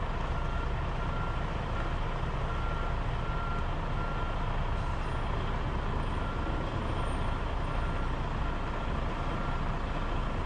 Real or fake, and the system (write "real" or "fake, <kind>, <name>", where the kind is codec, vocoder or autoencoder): real